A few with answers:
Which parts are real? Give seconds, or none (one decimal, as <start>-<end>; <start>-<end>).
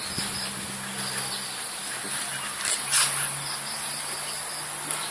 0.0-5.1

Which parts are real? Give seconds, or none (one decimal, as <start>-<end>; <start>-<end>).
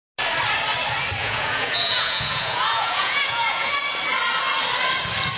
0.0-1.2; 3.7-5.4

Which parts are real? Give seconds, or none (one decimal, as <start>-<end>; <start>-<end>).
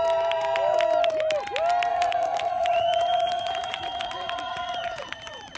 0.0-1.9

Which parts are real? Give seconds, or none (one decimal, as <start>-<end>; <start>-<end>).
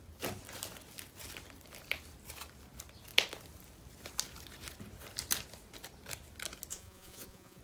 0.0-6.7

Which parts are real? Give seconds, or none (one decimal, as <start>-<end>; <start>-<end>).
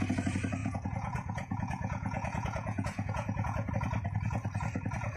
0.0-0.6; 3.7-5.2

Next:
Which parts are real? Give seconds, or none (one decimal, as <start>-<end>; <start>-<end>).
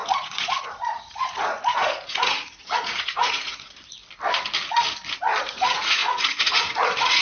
4.0-5.4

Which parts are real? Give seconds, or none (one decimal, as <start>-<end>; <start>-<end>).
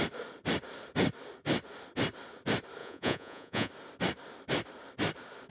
0.0-2.8; 3.7-5.5